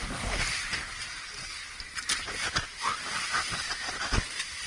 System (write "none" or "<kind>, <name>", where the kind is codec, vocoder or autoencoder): none